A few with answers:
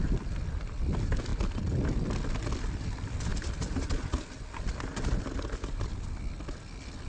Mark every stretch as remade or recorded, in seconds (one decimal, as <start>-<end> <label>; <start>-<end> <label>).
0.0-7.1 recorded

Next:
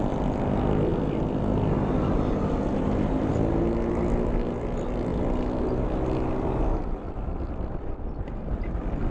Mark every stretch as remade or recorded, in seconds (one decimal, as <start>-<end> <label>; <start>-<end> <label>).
0.0-9.1 recorded

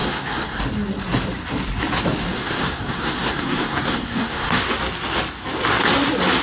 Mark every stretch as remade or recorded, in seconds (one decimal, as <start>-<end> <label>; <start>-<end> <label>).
0.0-0.6 remade; 0.6-2.3 recorded; 2.3-4.6 remade; 4.6-6.4 recorded

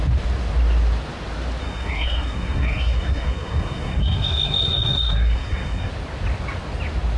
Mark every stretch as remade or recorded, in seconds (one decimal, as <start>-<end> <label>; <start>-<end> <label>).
0.0-1.6 recorded; 1.6-5.9 remade; 5.9-7.2 recorded

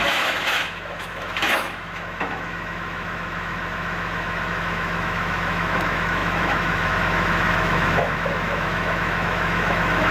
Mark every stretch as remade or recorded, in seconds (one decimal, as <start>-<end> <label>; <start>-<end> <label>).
0.0-10.1 remade